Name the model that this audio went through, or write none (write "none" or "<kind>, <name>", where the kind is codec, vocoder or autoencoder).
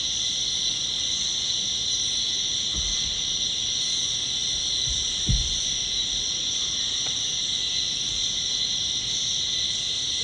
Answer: none